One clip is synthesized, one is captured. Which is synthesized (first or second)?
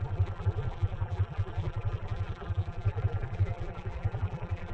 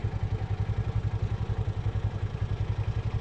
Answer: first